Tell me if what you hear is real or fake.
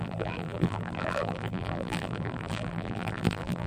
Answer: fake